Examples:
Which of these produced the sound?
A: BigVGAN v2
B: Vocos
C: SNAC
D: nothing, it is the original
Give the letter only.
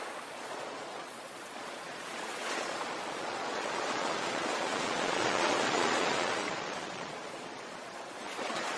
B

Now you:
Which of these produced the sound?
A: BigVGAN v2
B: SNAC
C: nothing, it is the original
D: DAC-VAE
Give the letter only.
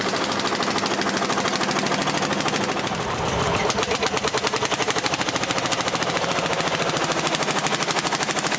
C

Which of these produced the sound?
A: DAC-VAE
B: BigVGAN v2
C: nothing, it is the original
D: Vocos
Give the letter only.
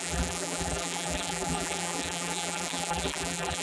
B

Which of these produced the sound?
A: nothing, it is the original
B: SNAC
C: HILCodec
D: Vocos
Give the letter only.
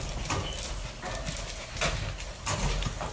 A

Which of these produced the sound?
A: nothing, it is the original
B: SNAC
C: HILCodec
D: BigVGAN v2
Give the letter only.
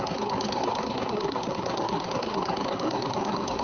B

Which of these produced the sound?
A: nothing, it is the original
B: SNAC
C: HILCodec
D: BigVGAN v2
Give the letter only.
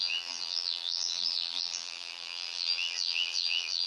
D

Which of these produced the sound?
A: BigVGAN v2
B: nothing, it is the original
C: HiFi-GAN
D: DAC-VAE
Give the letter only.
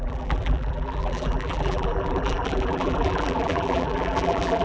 A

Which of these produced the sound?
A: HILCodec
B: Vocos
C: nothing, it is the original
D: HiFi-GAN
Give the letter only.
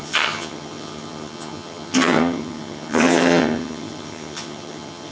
D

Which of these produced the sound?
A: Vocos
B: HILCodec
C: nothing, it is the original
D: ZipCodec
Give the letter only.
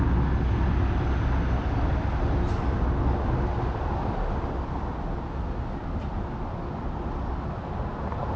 C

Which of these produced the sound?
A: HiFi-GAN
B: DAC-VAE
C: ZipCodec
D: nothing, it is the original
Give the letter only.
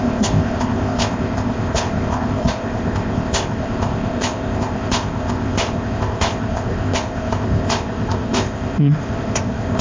C